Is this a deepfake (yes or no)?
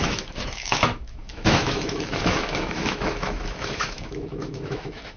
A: yes